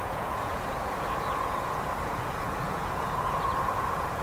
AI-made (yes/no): yes